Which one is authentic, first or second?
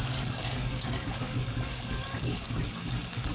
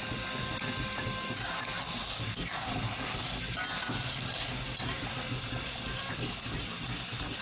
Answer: second